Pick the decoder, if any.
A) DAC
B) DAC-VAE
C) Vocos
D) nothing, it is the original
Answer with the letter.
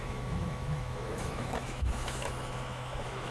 B